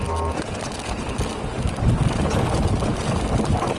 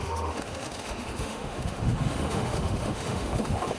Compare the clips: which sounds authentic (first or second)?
first